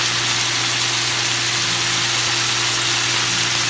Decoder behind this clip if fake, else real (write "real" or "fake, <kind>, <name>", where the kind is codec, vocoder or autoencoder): real